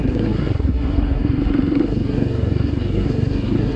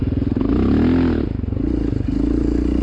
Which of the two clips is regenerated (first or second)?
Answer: first